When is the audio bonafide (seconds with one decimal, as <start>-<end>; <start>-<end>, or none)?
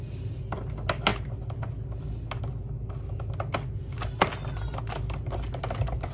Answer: 0.0-6.1